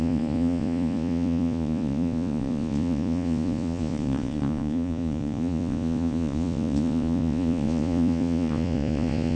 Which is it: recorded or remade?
remade